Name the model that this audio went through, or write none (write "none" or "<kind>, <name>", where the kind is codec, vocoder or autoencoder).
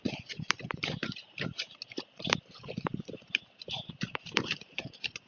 vocoder, BigVGAN v2